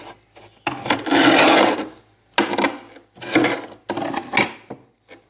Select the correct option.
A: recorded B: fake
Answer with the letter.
A